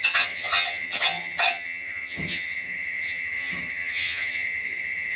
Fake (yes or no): yes